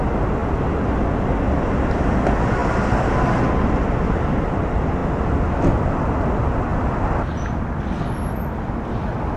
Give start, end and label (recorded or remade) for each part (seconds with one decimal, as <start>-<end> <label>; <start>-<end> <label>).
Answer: 0.0-9.4 recorded